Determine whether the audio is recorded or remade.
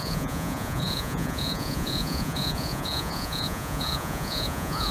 remade